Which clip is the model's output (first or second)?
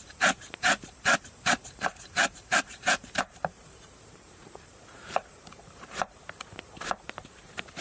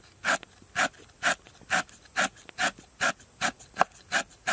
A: first